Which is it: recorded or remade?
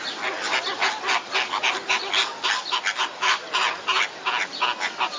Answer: recorded